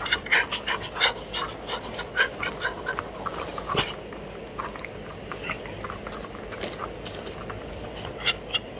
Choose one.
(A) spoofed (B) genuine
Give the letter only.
B